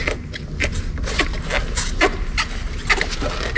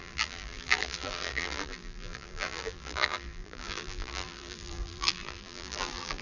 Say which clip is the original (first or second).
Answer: first